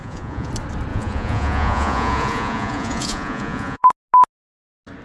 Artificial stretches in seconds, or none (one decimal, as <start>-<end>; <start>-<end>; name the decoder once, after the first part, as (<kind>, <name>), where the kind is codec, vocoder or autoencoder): 0.0-0.5 (vocoder, Vocos); 0.9-3.9